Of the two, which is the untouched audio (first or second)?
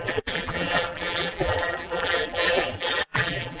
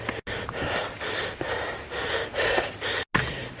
second